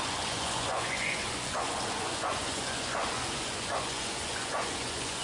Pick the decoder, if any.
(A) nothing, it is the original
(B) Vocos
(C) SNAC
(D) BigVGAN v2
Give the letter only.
B